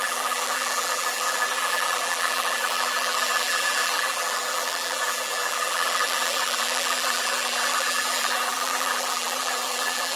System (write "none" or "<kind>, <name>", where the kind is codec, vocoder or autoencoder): vocoder, BigVGAN v2